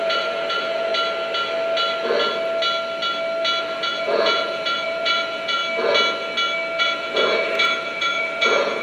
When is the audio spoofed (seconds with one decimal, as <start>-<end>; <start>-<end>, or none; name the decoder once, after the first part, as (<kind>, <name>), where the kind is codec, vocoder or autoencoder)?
0.0-0.9 (vocoder, Vocos); 3.6-5.6; 6.8-8.8